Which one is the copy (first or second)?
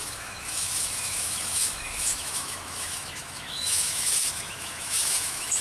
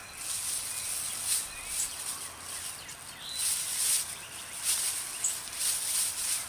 first